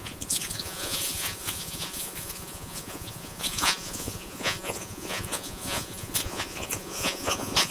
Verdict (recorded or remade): remade